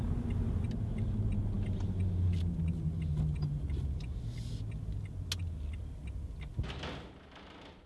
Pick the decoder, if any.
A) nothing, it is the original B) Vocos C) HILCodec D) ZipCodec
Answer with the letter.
A